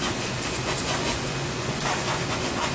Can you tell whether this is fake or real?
fake